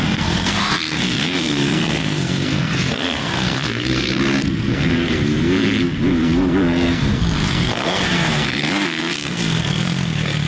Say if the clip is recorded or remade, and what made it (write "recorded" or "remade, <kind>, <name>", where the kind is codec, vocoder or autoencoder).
remade, codec, SNAC